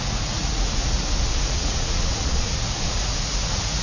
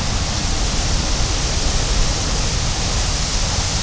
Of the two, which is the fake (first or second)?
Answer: first